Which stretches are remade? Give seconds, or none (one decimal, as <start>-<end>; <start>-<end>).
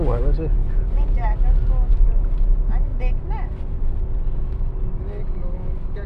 0.6-1.6